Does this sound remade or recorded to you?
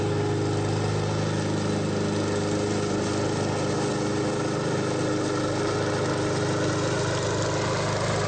recorded